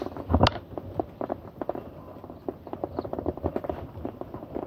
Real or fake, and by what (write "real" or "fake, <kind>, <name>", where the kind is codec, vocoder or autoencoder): real